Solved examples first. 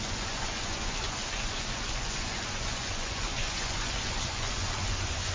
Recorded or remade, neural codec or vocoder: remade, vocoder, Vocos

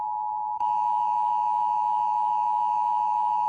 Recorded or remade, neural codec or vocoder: remade, autoencoder, DAC-VAE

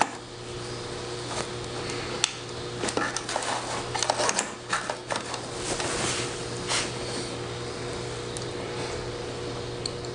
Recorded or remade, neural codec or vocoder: recorded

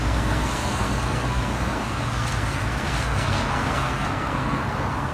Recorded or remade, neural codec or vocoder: remade, codec, SNAC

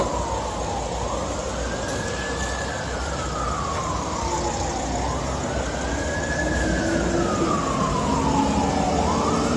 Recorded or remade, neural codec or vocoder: recorded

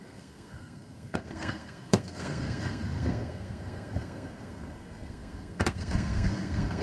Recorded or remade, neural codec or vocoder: remade, codec, SNAC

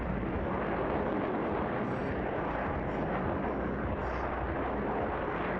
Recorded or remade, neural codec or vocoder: recorded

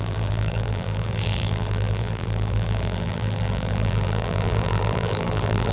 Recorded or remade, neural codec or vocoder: remade, vocoder, BigVGAN v2